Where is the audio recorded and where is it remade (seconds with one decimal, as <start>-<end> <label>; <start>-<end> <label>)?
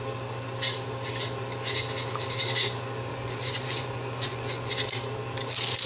0.0-3.1 recorded; 3.1-4.7 remade; 4.7-5.9 recorded